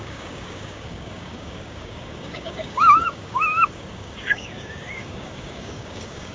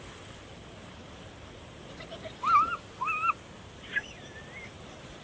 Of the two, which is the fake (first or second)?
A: first